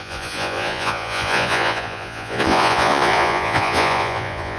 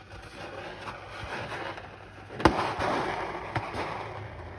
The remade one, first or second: first